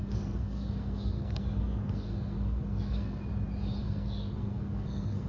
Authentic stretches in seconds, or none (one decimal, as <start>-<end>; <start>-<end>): 3.2-3.8